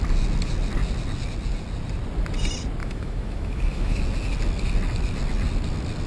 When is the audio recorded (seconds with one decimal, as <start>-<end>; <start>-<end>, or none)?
0.0-2.8; 4.0-6.1